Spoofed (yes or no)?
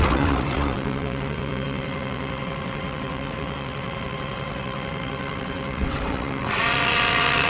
yes